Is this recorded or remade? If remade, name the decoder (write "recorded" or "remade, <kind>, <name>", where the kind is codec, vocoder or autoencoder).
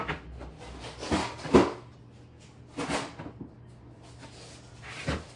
recorded